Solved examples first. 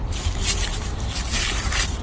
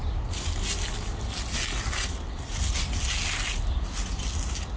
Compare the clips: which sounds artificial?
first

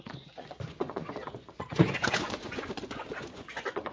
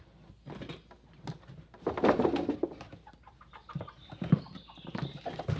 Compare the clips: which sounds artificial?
first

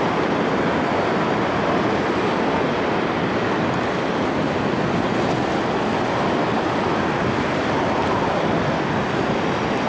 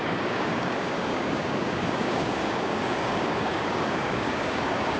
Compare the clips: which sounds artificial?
second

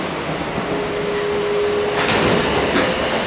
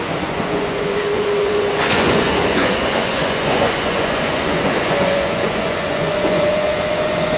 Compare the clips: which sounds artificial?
second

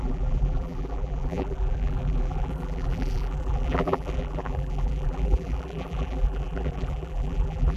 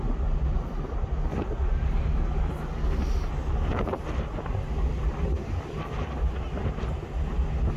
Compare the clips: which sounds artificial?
first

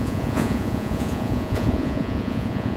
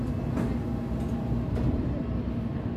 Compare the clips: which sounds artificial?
first